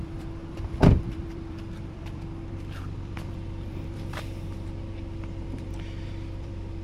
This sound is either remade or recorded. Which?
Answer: remade